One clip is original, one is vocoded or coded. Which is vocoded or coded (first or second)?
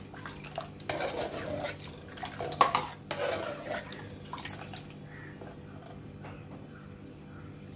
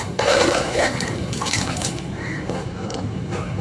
second